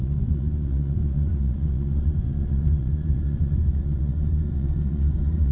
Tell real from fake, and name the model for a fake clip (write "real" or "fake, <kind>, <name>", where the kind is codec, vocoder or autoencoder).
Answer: fake, vocoder, Vocos